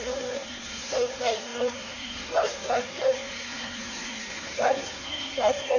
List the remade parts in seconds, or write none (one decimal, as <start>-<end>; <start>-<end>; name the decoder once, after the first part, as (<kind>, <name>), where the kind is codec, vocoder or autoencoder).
0.0-5.8 (codec, SNAC)